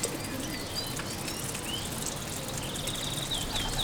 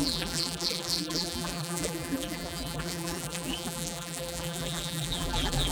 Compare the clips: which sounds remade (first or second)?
second